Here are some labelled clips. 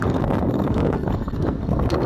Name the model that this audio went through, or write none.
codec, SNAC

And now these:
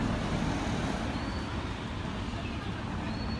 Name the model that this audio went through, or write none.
none